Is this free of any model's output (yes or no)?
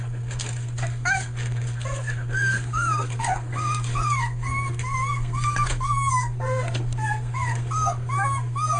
no